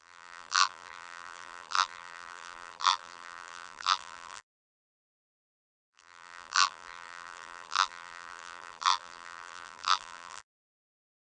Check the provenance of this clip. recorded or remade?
remade